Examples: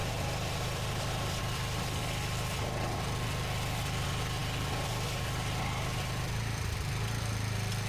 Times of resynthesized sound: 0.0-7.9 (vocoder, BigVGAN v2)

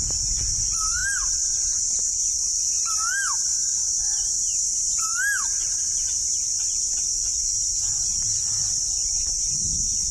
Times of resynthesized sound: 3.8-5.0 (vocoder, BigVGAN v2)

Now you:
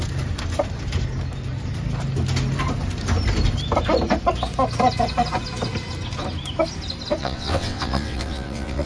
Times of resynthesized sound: 7.2-8.9 (vocoder, WaveNeXt)

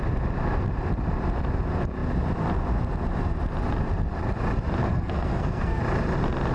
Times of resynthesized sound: 4.8-5.8 (codec, SNAC)